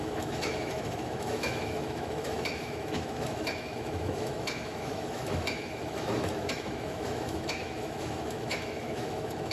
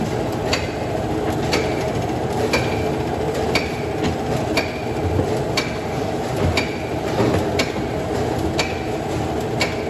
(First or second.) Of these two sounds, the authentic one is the second